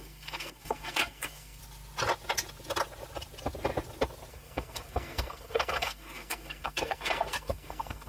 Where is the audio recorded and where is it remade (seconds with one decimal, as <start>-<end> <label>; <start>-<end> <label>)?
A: 0.0-1.6 remade; 1.6-4.3 recorded; 4.3-8.1 remade